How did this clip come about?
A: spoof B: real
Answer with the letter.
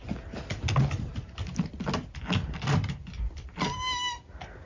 B